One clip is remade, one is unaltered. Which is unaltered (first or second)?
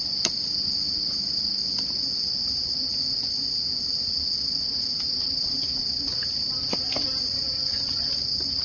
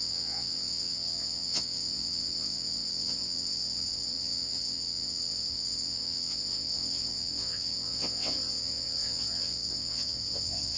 first